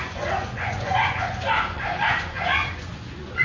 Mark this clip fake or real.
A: fake